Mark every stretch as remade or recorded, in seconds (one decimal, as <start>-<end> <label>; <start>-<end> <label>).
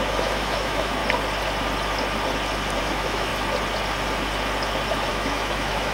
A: 0.0-1.0 remade; 1.0-2.8 recorded; 2.8-3.3 remade; 3.3-5.1 recorded; 5.1-5.9 remade